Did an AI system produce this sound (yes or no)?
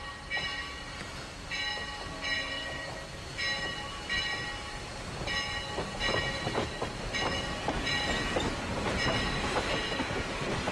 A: no